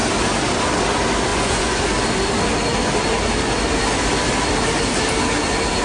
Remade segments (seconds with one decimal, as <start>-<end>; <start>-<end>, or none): 1.3-1.8